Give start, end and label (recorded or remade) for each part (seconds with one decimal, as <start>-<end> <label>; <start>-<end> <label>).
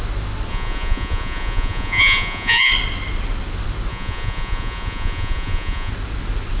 0.0-0.5 recorded; 0.5-2.7 remade; 2.7-3.9 recorded; 3.9-5.9 remade; 5.9-6.6 recorded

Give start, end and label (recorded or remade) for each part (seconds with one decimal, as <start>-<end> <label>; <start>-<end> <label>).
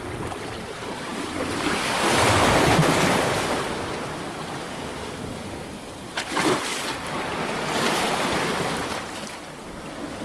0.0-1.1 remade; 1.1-1.7 recorded; 1.7-2.4 remade; 2.4-3.3 recorded; 3.3-10.2 remade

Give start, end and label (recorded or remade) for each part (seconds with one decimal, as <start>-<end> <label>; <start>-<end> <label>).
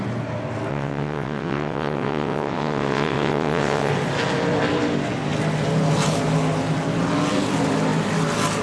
0.0-0.7 recorded; 0.7-3.9 remade; 3.9-8.6 recorded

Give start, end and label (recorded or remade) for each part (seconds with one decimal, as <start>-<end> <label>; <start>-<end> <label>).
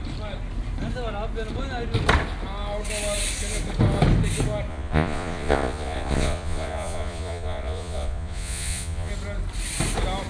0.0-4.7 recorded; 4.7-9.1 remade; 9.1-10.3 recorded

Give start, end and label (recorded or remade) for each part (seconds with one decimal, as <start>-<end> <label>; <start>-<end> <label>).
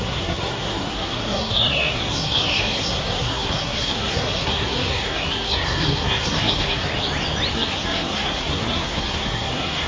0.0-6.9 remade; 6.9-7.5 recorded; 7.5-9.9 remade